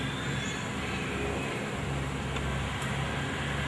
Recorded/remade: recorded